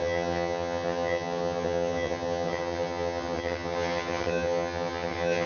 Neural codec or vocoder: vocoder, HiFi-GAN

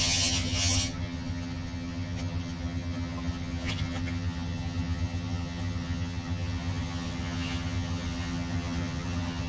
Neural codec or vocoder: vocoder, HiFi-GAN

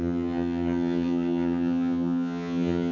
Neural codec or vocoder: vocoder, HiFi-GAN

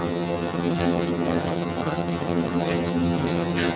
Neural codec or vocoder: vocoder, HiFi-GAN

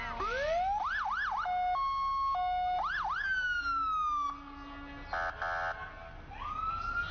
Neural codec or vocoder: none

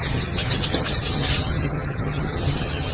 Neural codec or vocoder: vocoder, HiFi-GAN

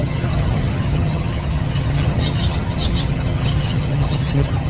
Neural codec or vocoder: vocoder, HiFi-GAN